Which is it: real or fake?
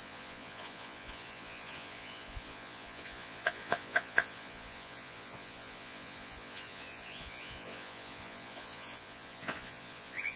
fake